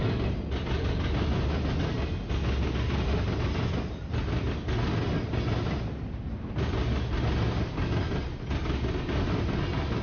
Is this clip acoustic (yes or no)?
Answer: yes